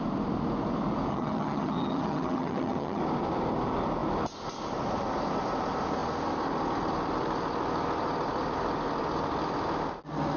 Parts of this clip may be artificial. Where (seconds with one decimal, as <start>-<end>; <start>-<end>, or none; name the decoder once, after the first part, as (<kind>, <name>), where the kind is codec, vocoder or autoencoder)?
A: 1.1-3.0 (vocoder, HiFi-GAN)